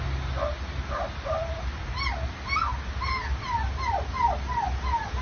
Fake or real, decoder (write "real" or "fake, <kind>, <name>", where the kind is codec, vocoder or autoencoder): real